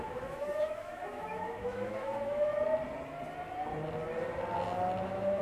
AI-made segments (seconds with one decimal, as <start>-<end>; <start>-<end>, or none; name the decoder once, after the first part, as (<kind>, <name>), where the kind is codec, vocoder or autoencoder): 0.0-2.5 (autoencoder, DAC-VAE); 5.0-5.4